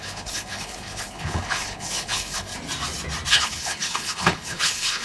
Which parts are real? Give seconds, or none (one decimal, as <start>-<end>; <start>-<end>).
2.5-3.3